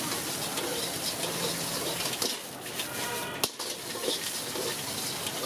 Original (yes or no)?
yes